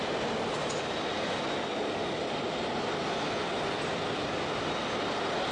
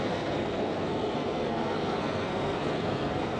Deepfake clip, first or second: second